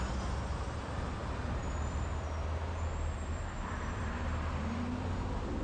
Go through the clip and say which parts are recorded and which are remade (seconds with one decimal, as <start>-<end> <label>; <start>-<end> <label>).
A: 0.0-5.6 recorded